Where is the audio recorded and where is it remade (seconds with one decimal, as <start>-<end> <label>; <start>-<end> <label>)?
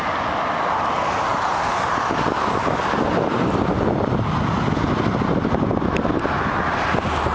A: 0.0-7.3 recorded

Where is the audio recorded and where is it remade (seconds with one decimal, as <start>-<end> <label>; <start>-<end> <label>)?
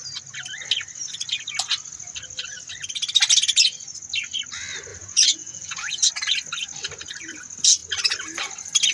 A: 0.0-4.9 recorded; 4.9-6.1 remade; 6.1-8.9 recorded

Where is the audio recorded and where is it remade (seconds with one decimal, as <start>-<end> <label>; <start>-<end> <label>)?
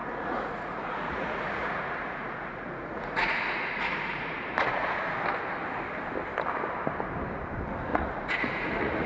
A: 0.0-5.0 remade; 5.0-7.9 recorded; 7.9-9.1 remade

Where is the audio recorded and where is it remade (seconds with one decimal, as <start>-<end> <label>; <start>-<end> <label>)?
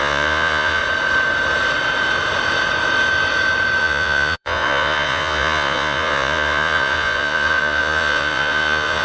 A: 0.0-0.8 remade; 0.8-3.8 recorded; 3.8-9.0 remade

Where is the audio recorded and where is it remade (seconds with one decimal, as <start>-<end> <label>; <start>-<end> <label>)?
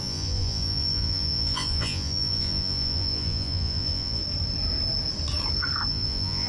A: 0.0-4.2 remade; 4.2-5.9 recorded; 5.9-6.5 remade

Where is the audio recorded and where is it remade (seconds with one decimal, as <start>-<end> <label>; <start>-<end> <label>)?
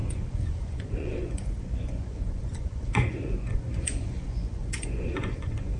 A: 0.0-5.8 remade